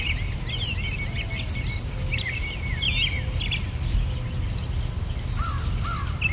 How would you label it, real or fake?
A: real